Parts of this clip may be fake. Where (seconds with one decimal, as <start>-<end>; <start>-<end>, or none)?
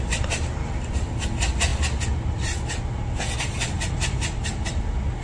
none